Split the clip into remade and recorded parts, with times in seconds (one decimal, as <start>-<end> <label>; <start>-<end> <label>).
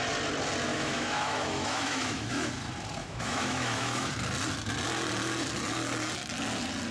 0.0-0.7 recorded; 0.7-2.5 remade; 2.5-3.0 recorded; 3.0-4.1 remade; 4.1-6.9 recorded